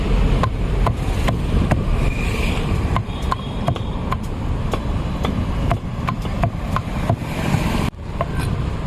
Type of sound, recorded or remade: remade